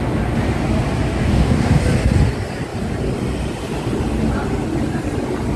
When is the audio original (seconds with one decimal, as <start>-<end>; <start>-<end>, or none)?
0.0-1.2; 1.8-5.6